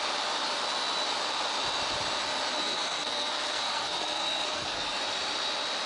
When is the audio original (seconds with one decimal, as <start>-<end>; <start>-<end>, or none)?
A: 0.0-2.6; 5.0-5.9